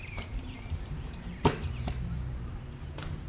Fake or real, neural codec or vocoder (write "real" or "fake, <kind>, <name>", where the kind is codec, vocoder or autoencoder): fake, vocoder, BigVGAN v2